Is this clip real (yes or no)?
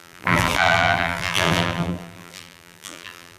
no